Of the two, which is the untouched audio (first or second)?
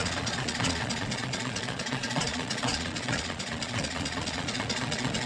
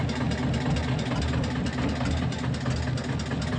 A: second